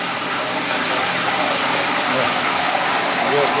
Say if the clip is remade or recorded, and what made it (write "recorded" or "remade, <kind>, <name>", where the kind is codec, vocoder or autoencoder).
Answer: recorded